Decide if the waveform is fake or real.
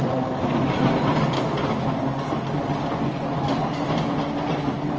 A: real